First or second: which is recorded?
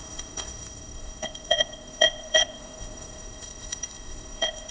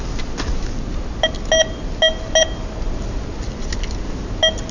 second